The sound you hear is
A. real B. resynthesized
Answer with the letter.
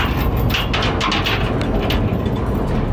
A